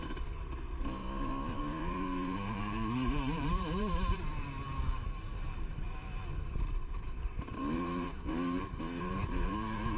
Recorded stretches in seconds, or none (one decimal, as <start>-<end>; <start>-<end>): 1.0-1.6